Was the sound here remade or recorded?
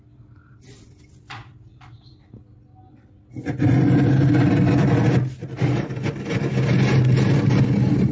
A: recorded